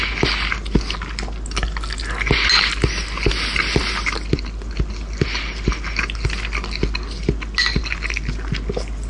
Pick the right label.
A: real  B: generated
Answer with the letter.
A